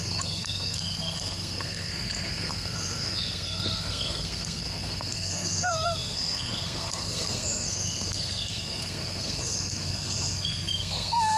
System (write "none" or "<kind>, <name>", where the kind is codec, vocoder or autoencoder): codec, SNAC